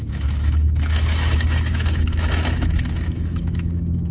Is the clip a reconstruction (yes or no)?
yes